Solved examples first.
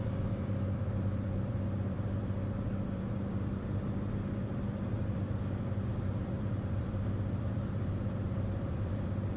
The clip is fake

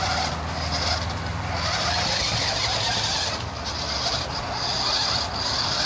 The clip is real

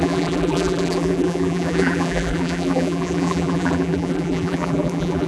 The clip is fake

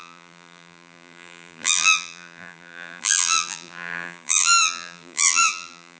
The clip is fake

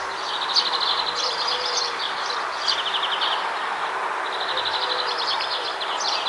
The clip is real